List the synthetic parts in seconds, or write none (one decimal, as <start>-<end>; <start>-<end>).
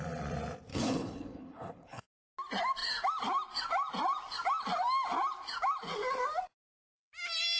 0.7-2.1